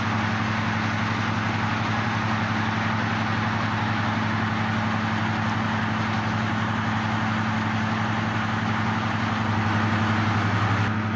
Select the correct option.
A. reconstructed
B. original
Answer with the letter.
B